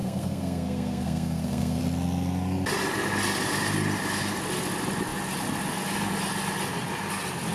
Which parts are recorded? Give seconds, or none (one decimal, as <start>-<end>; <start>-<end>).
1.8-7.5